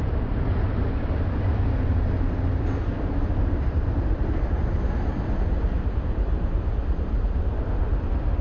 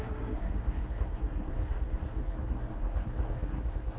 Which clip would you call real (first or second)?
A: first